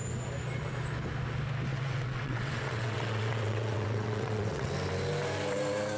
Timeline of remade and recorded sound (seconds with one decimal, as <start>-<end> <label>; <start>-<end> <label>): 0.0-1.7 recorded; 1.7-4.7 remade; 4.7-6.0 recorded